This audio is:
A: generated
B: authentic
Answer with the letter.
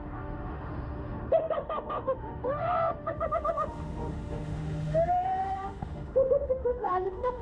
A